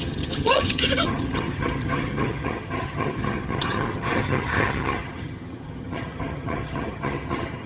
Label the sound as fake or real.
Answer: fake